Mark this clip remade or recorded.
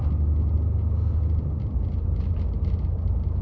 recorded